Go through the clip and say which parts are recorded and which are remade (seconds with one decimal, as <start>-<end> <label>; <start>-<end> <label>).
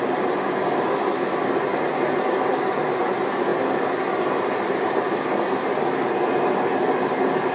0.0-7.5 recorded